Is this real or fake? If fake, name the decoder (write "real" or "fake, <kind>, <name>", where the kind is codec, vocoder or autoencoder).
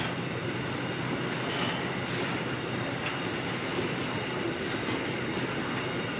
real